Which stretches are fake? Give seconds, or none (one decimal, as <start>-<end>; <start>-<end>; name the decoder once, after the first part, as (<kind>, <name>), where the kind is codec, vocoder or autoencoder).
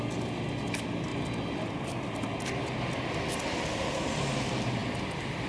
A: none